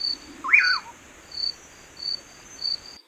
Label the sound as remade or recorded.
recorded